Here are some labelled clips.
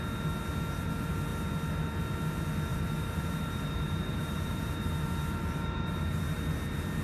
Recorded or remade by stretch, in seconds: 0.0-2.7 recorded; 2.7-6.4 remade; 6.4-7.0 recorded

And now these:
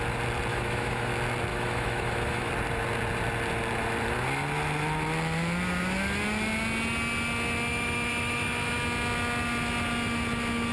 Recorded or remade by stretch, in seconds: 0.0-0.5 recorded; 0.5-1.1 remade; 1.1-1.5 recorded; 1.5-2.5 remade; 2.5-7.7 recorded; 7.7-8.8 remade; 8.8-10.7 recorded

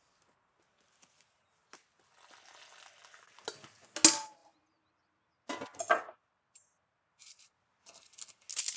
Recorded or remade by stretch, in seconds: 0.0-8.8 recorded

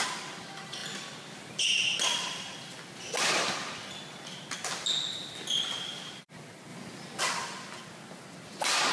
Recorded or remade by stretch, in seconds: 0.0-8.9 recorded

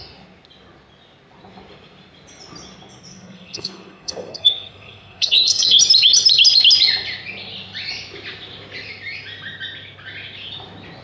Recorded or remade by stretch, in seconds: 0.0-3.1 recorded; 3.1-5.8 remade; 5.8-11.0 recorded

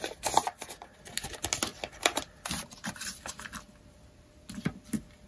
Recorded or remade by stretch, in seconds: 0.0-0.4 recorded; 0.4-1.0 remade; 1.0-1.7 recorded; 1.7-5.3 remade

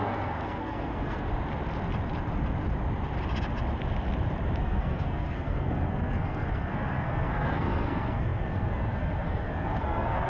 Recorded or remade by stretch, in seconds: 0.0-1.3 remade; 1.3-4.6 recorded; 4.6-10.3 remade